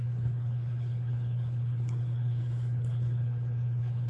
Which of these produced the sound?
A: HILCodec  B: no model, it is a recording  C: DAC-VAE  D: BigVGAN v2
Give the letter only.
A